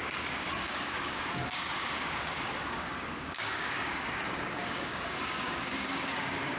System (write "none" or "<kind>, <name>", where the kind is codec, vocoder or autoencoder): codec, DAC